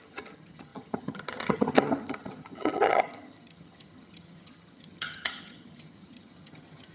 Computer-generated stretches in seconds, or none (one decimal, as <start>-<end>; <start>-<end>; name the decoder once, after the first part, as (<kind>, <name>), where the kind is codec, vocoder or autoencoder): 0.0-6.9 (vocoder, HiFi-GAN)